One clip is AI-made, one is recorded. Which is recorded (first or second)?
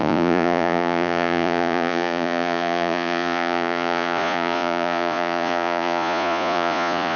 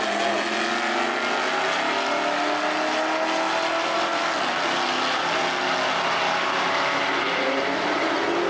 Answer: second